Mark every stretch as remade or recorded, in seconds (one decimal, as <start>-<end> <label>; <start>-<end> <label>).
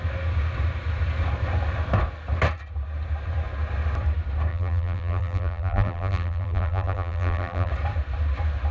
0.0-4.5 recorded; 4.5-7.7 remade; 7.7-8.7 recorded